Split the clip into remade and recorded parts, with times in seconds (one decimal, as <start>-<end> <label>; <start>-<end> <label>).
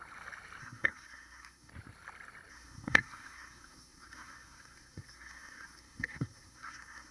0.0-0.6 recorded; 0.6-1.7 remade; 1.7-2.5 recorded; 2.5-7.1 remade